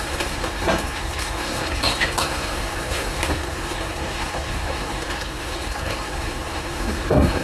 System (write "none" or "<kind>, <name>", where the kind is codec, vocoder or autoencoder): codec, SNAC